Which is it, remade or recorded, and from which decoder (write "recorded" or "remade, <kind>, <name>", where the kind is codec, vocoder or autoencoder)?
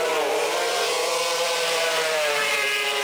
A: remade, vocoder, BigVGAN v2